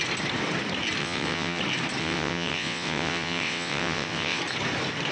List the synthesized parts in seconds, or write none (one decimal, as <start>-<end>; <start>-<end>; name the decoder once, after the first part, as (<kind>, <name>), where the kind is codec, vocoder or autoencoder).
1.0-1.6 (vocoder, WaveNeXt); 2.0-4.4